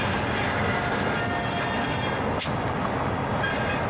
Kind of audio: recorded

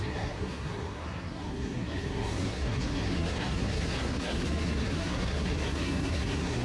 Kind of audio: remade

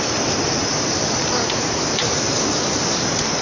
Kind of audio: recorded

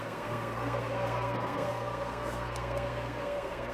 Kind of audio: remade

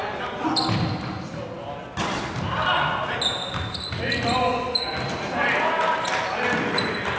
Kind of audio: recorded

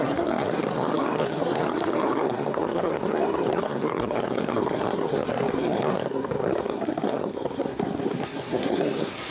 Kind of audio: remade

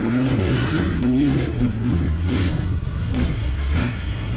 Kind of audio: remade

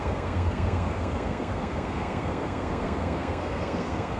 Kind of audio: remade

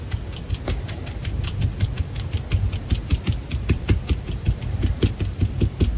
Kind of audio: recorded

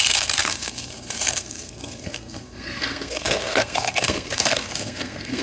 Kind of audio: remade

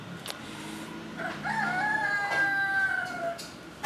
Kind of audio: recorded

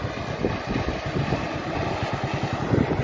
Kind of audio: recorded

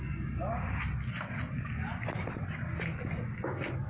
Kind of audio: recorded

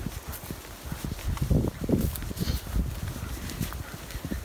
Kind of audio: recorded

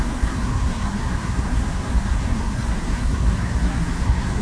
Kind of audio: remade